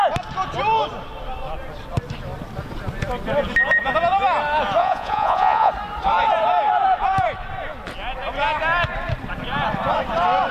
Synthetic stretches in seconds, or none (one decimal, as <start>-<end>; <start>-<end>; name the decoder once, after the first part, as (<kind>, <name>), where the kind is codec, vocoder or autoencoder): 4.8-5.7 (vocoder, Vocos)